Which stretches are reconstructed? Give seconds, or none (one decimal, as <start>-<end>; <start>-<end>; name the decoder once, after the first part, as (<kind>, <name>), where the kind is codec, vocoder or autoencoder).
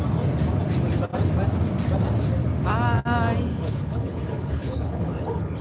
3.5-5.6 (codec, HILCodec)